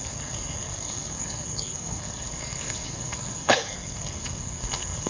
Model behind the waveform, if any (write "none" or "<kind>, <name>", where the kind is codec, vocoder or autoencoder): codec, SNAC